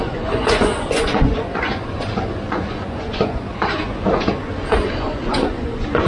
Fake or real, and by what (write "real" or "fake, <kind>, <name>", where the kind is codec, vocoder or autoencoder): fake, vocoder, Vocos